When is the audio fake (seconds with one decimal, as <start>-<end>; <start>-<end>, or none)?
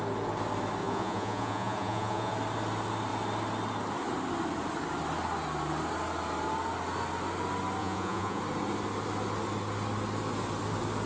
0.8-2.3; 7.8-8.4